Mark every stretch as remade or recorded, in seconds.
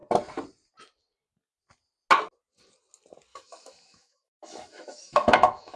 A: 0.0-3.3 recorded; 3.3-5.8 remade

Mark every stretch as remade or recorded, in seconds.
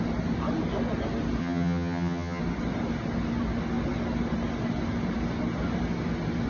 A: 0.0-1.4 recorded; 1.4-2.4 remade; 2.4-6.5 recorded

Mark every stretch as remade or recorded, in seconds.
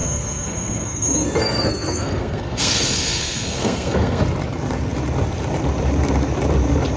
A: 0.0-4.2 remade; 4.2-7.0 recorded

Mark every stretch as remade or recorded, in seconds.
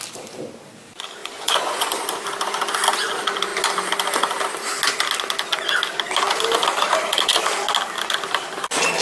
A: 0.0-1.2 recorded; 1.2-1.9 remade; 1.9-9.0 recorded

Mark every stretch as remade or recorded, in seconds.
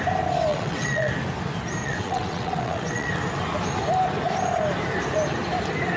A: 0.0-0.5 recorded; 0.5-1.1 remade; 1.1-1.8 recorded; 1.8-3.1 remade; 3.1-6.0 recorded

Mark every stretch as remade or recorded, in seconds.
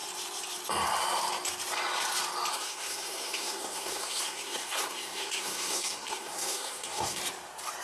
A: 0.0-2.5 recorded; 2.5-7.2 remade; 7.2-7.8 recorded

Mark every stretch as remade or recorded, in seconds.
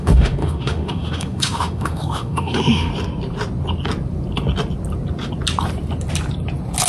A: 0.0-2.9 remade; 2.9-6.9 recorded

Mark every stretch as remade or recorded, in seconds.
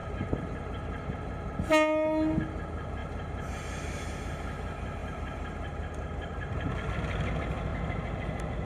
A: 0.0-1.6 remade; 1.6-3.0 recorded; 3.0-3.5 remade; 3.5-5.0 recorded; 5.0-6.9 remade; 6.9-8.7 recorded